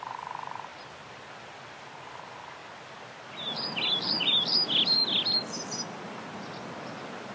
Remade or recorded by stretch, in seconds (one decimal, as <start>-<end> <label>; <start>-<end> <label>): 0.0-7.3 recorded